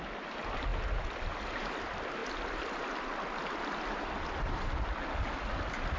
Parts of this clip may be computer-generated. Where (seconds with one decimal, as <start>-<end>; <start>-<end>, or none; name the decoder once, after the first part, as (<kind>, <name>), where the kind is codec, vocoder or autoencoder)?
none